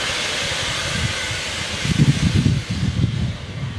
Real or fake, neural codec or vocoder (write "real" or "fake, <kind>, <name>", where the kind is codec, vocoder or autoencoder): real